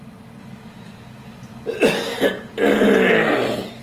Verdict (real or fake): real